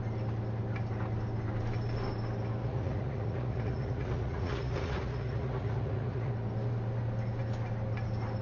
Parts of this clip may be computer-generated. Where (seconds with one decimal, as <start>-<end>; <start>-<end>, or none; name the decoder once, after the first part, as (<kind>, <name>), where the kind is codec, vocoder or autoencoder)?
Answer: 2.6-6.3 (vocoder, Vocos)